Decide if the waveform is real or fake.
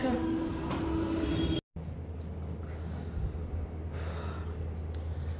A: real